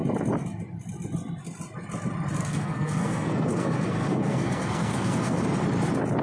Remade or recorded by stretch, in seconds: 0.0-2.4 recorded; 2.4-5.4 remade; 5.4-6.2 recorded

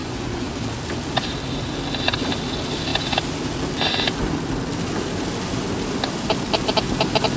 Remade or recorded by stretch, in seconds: 0.0-0.5 remade; 0.5-7.4 recorded

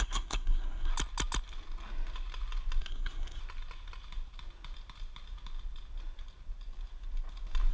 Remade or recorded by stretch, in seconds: 0.0-0.9 remade; 0.9-2.8 recorded; 2.8-3.4 remade; 3.4-7.7 recorded

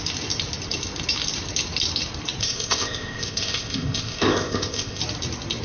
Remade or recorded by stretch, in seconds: 0.0-2.4 recorded; 2.4-5.0 remade; 5.0-5.6 recorded

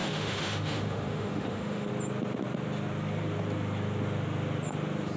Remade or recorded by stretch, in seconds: 0.0-1.9 remade; 1.9-5.2 recorded